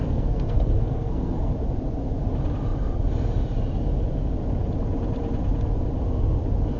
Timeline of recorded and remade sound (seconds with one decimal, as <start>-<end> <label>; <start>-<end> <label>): 0.0-1.5 remade; 1.5-6.8 recorded